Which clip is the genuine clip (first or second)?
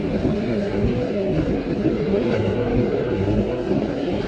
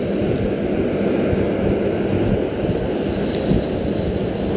second